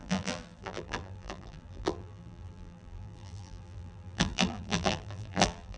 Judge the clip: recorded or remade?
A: remade